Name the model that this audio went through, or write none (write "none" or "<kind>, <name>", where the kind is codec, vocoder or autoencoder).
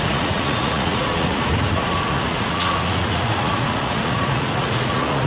vocoder, Vocos